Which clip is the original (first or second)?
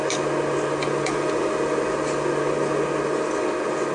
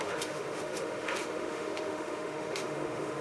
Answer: first